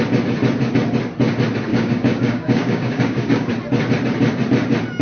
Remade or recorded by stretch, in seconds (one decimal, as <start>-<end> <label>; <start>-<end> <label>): 0.0-1.7 recorded; 1.7-3.5 remade; 3.5-5.0 recorded